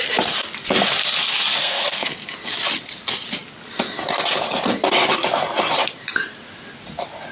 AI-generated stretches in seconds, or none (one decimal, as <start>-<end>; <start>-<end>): 1.6-2.1